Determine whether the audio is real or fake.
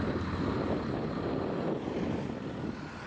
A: real